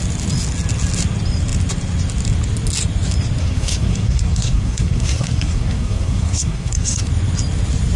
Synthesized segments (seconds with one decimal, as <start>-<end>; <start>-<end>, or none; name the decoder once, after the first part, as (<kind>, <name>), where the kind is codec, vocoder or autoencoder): 3.4-7.1 (codec, SNAC)